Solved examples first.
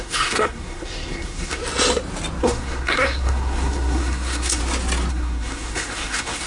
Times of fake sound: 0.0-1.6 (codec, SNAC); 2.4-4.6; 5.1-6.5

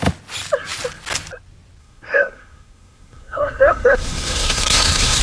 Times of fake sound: 1.8-5.2 (codec, SNAC)

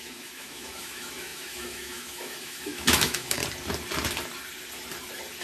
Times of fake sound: 0.0-3.4 (autoencoder, DAC-VAE)